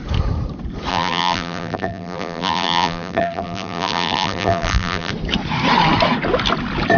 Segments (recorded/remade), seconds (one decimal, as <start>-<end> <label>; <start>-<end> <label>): 0.0-0.9 recorded; 0.9-5.1 remade; 5.1-7.0 recorded